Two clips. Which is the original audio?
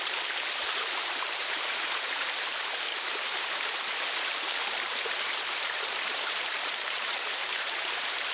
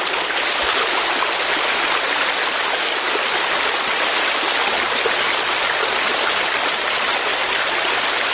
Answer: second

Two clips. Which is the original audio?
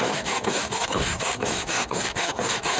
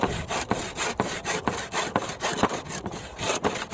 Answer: second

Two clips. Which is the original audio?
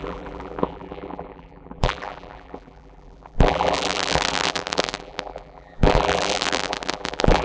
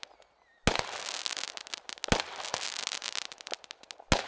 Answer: second